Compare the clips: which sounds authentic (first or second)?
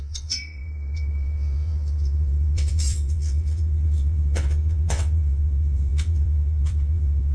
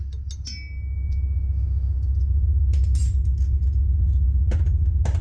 second